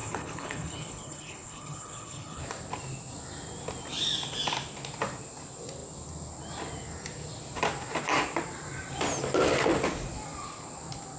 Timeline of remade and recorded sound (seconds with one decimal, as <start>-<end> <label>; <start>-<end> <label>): 0.0-2.4 remade; 2.4-11.2 recorded